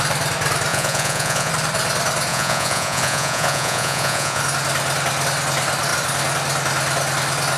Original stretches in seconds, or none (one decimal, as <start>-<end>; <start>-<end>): 0.0-0.7; 1.5-2.3; 4.4-7.6